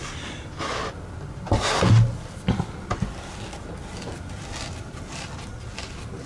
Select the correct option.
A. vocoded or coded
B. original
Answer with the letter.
B